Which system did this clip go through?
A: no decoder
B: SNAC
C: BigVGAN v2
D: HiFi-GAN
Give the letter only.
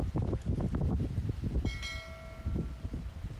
A